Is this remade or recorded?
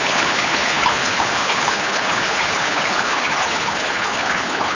remade